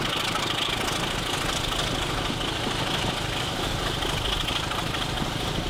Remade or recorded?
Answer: recorded